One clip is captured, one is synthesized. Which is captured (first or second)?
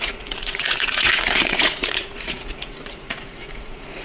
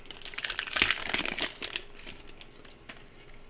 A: second